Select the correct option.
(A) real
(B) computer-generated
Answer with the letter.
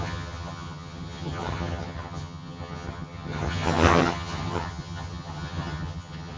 B